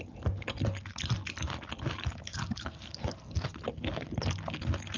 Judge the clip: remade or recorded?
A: recorded